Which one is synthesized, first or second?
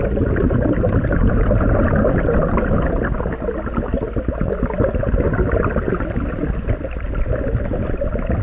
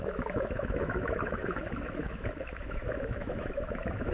second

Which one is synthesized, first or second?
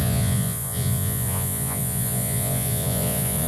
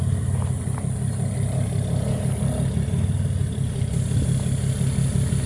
first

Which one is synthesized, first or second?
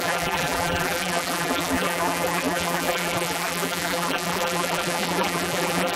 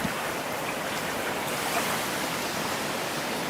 first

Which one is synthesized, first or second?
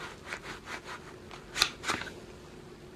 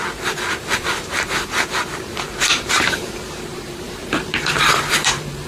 second